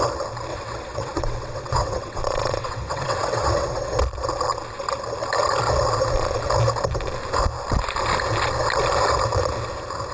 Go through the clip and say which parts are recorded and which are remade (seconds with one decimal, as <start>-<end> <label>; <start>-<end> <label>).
0.0-0.5 recorded; 0.5-4.0 remade; 4.0-10.1 recorded